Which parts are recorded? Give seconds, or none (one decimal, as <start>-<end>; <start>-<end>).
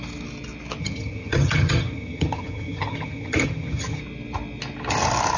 0.0-0.8; 4.0-5.4